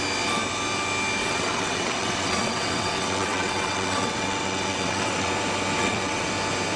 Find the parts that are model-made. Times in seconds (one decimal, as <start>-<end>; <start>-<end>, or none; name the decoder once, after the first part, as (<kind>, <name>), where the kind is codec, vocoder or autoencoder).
1.2-5.3 (vocoder, WaveNeXt); 5.8-6.3